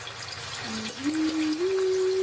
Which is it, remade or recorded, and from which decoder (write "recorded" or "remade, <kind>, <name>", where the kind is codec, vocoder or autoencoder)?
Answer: recorded